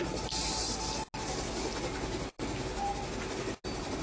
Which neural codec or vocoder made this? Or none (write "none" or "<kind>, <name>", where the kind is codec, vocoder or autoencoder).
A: none